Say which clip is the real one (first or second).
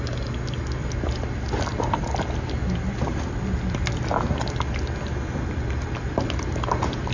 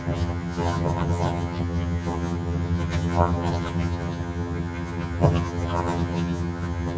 first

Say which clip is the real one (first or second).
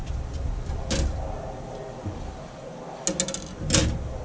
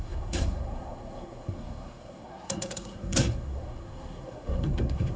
first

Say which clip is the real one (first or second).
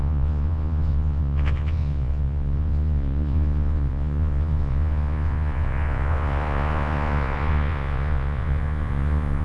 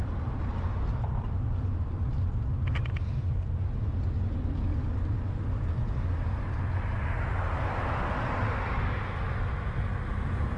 second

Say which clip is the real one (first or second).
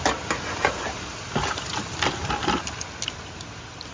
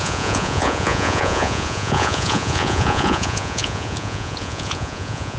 first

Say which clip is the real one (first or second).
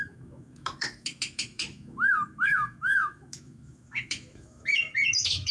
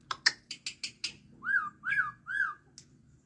second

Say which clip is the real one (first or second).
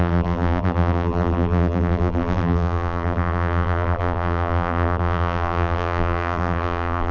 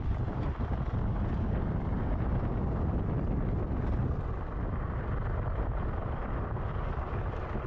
second